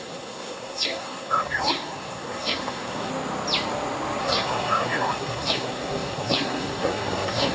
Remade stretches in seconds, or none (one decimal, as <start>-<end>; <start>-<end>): 0.0-3.1; 4.2-7.5